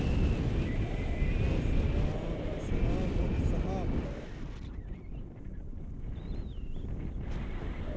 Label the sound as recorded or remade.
recorded